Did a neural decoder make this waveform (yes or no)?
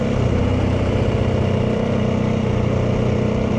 yes